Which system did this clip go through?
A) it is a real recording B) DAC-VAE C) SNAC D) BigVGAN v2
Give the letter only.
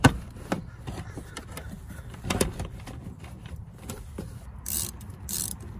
D